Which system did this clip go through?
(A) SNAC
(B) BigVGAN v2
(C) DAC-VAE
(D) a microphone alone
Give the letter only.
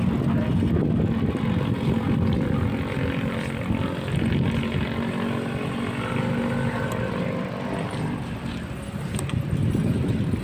D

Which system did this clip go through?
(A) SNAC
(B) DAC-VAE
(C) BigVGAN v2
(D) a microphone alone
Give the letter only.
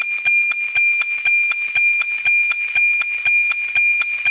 D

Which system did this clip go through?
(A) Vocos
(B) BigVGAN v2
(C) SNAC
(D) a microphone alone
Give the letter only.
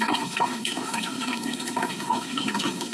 C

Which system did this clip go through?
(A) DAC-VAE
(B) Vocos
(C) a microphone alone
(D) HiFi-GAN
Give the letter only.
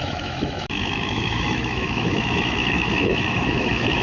A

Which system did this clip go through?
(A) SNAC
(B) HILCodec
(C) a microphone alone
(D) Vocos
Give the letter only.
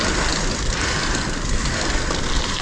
C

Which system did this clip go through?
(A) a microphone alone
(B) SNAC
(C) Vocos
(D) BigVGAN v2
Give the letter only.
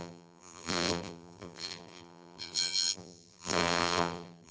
D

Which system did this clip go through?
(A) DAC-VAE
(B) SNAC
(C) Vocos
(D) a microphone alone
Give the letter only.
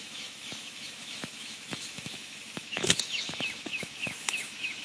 A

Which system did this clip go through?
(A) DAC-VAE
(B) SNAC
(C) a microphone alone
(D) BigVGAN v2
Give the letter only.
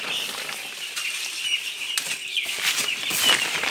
D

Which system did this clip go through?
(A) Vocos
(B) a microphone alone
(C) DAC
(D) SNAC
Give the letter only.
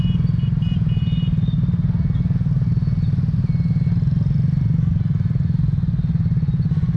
B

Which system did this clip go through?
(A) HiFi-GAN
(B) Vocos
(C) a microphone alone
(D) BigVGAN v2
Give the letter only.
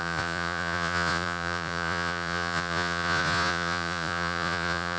B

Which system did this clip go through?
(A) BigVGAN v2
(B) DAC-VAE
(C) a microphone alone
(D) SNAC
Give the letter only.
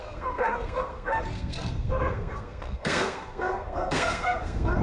D